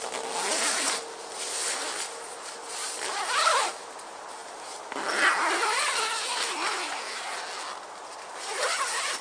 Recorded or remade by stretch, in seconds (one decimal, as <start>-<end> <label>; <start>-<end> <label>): 0.0-9.2 recorded